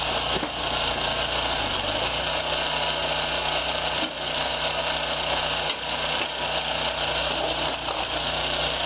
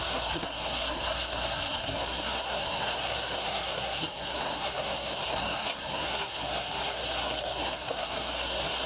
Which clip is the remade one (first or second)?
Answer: second